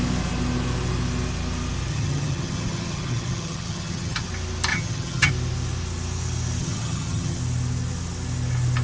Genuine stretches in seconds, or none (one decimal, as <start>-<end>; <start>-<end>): 0.0-1.9; 4.3-4.7; 5.3-6.6; 7.4-8.8